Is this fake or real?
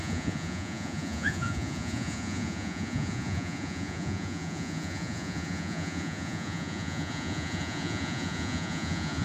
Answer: fake